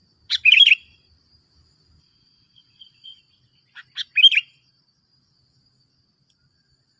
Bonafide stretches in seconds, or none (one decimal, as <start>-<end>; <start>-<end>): 0.0-2.0; 3.2-7.0